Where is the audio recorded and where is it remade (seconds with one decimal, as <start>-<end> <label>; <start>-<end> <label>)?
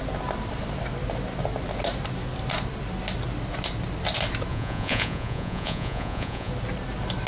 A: 0.0-4.5 recorded; 4.5-6.5 remade; 6.5-7.3 recorded